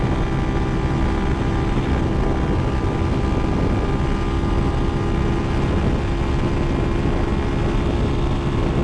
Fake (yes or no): no